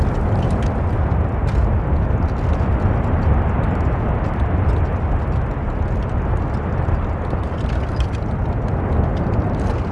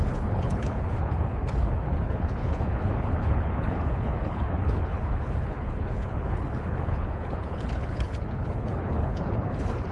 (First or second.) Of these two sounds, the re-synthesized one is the second